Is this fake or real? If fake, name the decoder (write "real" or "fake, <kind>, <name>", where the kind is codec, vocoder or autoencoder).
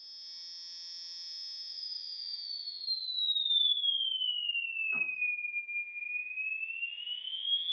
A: real